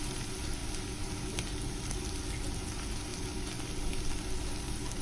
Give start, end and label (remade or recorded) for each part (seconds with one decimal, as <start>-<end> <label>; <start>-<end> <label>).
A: 0.0-5.0 recorded